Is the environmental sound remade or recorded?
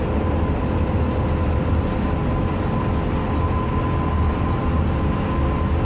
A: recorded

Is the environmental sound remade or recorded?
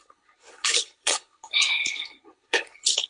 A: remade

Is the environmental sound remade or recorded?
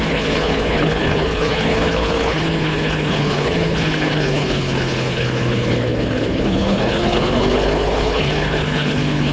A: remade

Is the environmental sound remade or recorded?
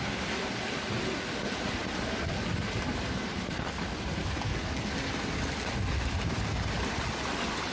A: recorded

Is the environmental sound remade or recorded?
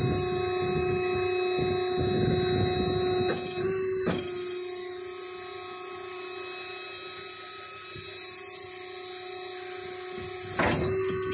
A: recorded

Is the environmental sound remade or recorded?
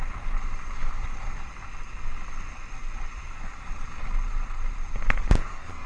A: recorded